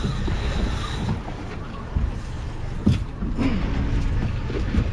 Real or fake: real